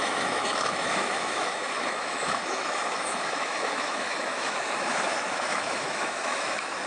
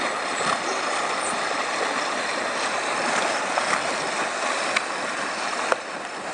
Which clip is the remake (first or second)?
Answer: first